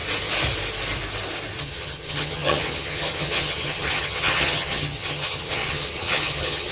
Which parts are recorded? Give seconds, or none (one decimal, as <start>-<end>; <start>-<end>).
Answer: 0.0-1.6